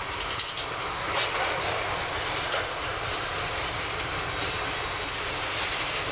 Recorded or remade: recorded